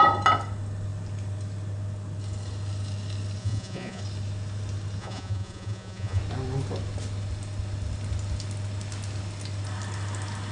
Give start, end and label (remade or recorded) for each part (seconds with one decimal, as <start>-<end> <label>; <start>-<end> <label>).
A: 0.0-3.4 recorded; 3.4-4.0 remade; 4.0-5.0 recorded; 5.0-6.2 remade; 6.2-10.5 recorded